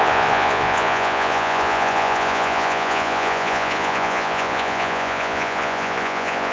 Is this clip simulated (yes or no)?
yes